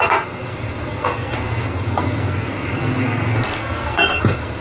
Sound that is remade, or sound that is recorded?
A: remade